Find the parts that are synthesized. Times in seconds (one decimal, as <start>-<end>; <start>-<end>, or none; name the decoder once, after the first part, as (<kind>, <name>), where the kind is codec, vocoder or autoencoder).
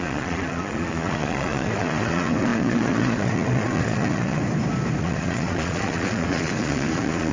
0.0-4.4 (vocoder, Vocos); 5.0-7.3